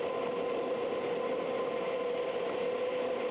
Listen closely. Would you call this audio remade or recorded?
recorded